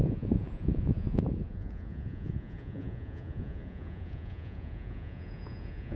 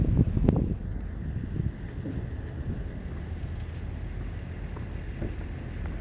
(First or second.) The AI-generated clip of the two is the first